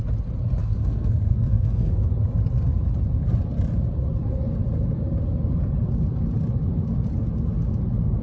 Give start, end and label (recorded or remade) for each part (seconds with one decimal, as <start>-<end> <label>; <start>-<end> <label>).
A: 0.0-0.6 recorded; 0.6-1.9 remade; 1.9-8.2 recorded